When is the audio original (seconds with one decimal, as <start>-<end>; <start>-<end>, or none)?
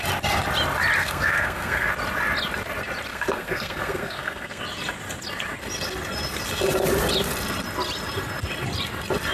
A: 0.0-1.0; 1.9-3.1; 4.6-9.3